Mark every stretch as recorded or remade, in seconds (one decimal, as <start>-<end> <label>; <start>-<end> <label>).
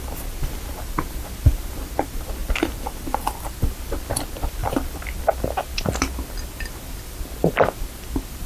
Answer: 0.0-2.4 recorded; 2.4-3.5 remade; 3.5-4.6 recorded; 4.6-5.2 remade; 5.2-8.5 recorded